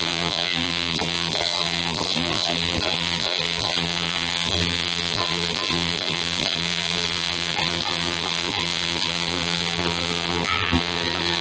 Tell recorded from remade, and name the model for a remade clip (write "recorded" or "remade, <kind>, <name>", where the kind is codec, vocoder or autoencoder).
remade, vocoder, BigVGAN v2